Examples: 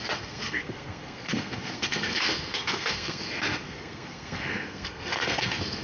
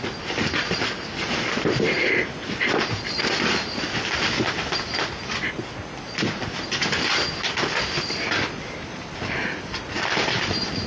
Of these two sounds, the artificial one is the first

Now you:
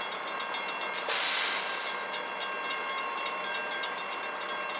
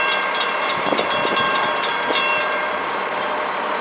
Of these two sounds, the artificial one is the second